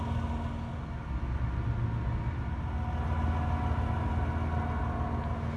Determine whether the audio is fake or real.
real